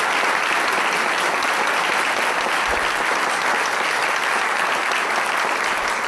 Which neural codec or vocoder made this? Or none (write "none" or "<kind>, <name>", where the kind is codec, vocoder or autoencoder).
none